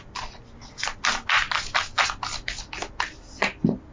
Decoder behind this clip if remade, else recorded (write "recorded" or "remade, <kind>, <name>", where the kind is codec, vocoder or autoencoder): recorded